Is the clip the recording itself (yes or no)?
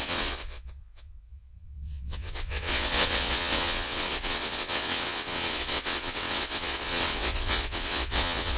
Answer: no